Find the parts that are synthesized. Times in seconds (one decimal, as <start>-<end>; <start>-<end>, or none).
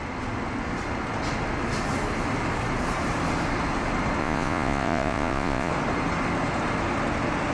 4.2-5.7